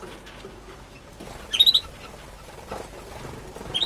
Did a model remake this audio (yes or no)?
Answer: no